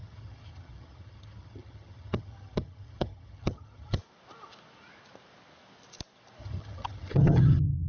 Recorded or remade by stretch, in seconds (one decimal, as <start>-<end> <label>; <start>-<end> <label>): 0.0-4.0 remade; 4.0-6.4 recorded; 6.4-7.9 remade